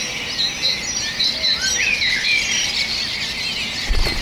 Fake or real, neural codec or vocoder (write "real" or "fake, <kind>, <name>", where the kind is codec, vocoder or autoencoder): real